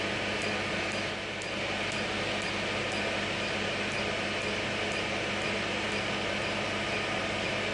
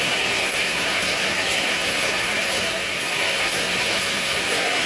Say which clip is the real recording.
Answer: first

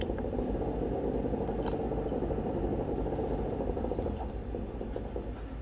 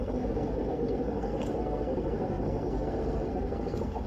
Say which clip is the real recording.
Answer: first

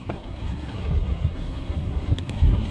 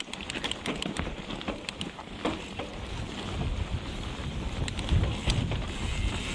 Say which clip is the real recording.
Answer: second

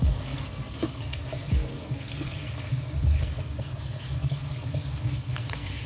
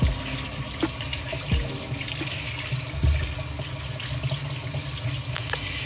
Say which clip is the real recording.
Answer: second